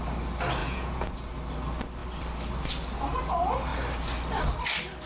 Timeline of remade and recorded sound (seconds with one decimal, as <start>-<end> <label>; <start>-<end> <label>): 0.0-0.6 recorded; 0.6-1.1 remade; 1.1-5.1 recorded